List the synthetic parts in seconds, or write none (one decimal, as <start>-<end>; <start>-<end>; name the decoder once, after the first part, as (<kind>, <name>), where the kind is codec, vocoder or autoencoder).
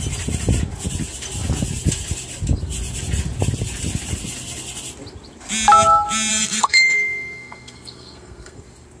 6.3-8.6 (codec, SNAC)